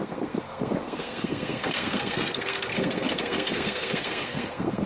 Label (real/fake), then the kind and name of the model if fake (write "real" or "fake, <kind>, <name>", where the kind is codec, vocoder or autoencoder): fake, codec, SNAC